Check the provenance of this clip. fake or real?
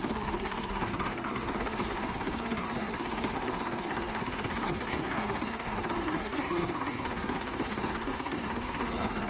fake